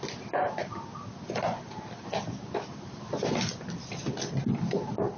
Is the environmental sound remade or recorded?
recorded